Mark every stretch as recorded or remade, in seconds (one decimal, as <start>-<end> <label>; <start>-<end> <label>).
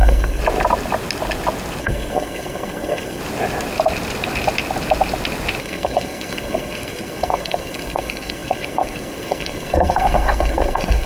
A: 0.0-0.4 remade; 0.4-1.8 recorded; 1.8-3.2 remade; 3.2-5.6 recorded; 5.6-11.1 remade